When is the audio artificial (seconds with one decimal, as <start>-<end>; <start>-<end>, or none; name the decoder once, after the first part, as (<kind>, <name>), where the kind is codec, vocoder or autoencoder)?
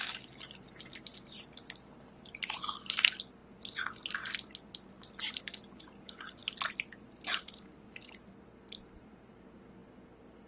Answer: none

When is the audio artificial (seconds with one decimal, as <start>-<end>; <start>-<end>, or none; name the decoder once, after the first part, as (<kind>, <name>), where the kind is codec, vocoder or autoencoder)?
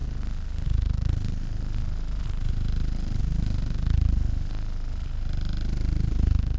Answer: none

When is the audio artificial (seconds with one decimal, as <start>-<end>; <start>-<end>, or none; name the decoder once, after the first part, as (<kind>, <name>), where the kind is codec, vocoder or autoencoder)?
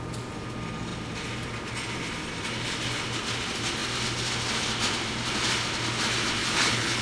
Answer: 6.4-7.0 (codec, HILCodec)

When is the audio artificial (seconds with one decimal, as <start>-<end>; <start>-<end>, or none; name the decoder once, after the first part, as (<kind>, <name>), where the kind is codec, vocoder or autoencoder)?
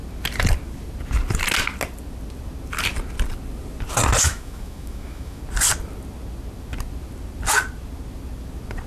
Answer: 4.2-5.4 (autoencoder, DAC-VAE)